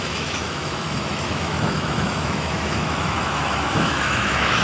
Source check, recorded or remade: remade